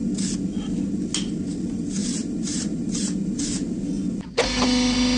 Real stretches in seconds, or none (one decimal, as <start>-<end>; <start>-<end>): 0.0-2.0; 3.8-5.2